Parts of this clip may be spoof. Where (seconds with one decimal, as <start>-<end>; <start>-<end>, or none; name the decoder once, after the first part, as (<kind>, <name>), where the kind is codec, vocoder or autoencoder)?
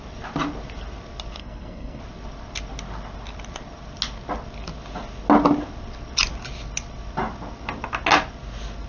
1.4-2.0 (codec, SNAC)